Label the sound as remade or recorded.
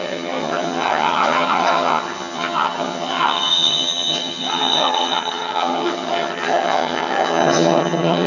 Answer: remade